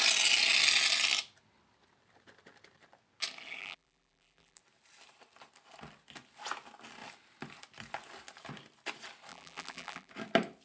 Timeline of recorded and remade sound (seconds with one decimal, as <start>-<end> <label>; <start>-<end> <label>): 0.0-3.6 recorded; 3.6-4.6 remade; 4.6-9.3 recorded; 9.3-10.1 remade; 10.1-10.6 recorded